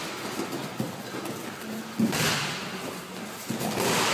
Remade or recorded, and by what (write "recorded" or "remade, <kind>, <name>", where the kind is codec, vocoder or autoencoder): recorded